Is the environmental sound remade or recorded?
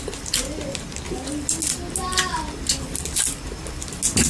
recorded